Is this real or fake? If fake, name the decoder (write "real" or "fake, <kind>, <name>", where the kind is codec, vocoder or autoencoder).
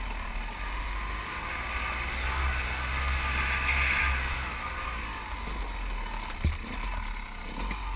real